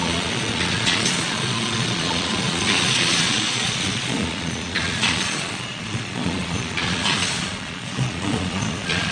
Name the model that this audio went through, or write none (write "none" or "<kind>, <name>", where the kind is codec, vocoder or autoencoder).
vocoder, Vocos